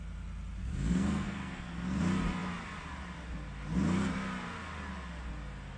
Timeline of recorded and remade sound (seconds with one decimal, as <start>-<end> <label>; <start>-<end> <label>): 0.0-0.6 recorded; 0.6-2.0 remade; 2.0-5.8 recorded